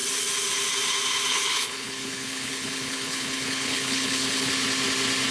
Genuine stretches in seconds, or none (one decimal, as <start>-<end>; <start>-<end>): 0.0-1.3; 4.5-5.3